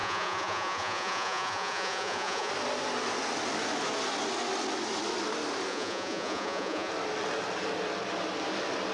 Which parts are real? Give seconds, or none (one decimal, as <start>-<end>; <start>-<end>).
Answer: 2.5-5.7; 6.9-8.9